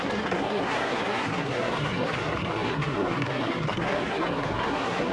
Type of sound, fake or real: fake